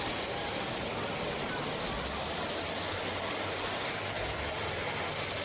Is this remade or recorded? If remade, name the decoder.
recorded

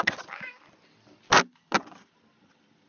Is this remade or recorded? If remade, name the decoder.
recorded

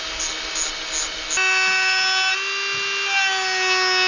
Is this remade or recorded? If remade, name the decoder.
recorded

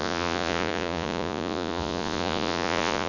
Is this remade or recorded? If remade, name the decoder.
remade, vocoder, Vocos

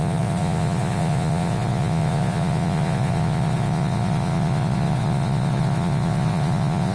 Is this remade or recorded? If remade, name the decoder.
remade, vocoder, Vocos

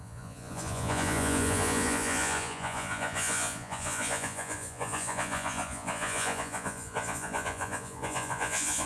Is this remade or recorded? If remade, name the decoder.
remade, vocoder, Vocos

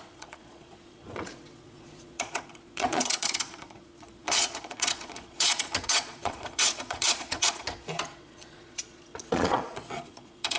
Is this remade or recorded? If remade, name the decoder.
remade, vocoder, Vocos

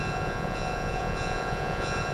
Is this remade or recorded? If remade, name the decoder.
remade, vocoder, Vocos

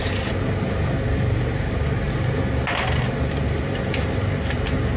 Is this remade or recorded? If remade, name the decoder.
recorded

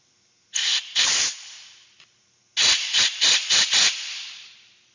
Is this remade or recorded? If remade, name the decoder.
recorded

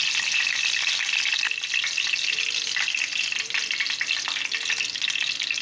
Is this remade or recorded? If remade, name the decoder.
recorded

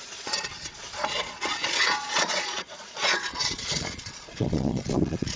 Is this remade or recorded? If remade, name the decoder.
remade, vocoder, Vocos